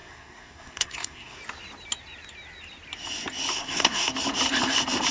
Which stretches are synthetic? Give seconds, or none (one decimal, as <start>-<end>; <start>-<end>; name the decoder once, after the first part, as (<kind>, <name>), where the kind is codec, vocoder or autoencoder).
0.0-1.4 (codec, SNAC); 3.5-4.1